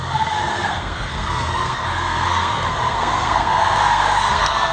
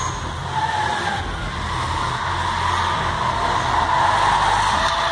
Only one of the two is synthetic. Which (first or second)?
first